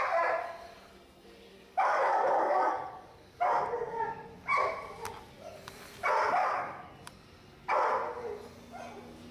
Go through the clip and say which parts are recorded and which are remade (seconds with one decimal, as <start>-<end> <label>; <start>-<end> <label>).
0.0-1.5 recorded; 1.5-3.6 remade; 3.6-6.4 recorded; 6.4-6.9 remade; 6.9-9.3 recorded